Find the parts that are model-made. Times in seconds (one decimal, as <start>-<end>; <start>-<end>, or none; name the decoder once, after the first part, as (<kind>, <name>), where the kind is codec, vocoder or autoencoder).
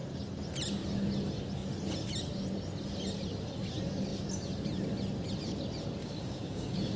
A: 6.0-7.0 (codec, DAC)